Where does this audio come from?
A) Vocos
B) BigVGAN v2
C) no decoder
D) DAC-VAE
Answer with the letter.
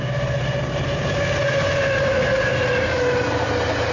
C